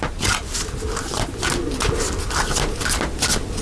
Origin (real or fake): real